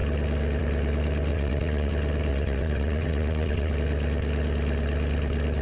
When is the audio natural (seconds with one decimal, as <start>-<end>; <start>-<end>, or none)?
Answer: 0.0-1.3; 1.9-2.3; 3.7-5.6